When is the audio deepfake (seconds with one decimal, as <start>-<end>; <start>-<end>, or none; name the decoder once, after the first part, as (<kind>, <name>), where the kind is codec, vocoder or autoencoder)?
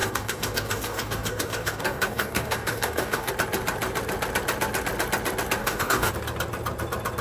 0.0-3.3 (codec, DAC); 5.6-6.1